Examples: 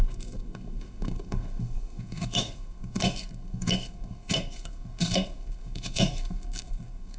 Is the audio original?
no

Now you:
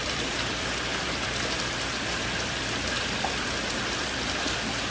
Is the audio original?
no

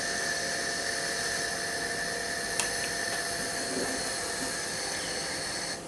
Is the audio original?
yes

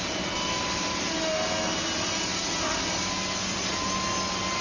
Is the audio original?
yes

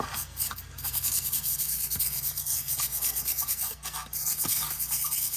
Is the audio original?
no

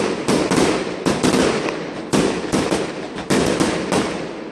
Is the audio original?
yes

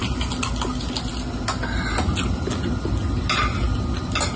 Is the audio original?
yes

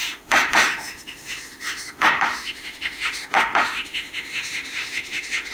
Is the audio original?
no